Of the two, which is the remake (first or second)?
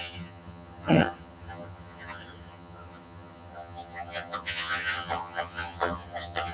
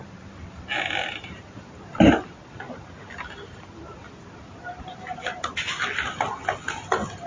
first